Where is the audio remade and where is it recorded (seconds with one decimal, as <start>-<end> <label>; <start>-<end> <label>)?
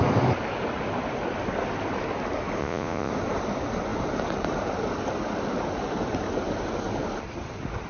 0.0-2.6 recorded; 2.6-3.1 remade; 3.1-7.9 recorded